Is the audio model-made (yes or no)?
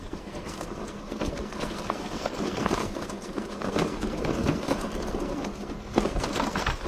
yes